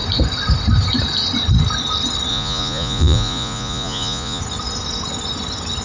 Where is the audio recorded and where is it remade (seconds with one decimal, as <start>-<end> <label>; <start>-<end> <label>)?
0.0-2.3 recorded; 2.3-4.4 remade; 4.4-5.8 recorded